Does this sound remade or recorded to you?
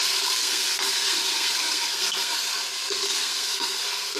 remade